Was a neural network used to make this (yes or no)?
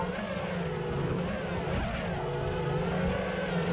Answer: no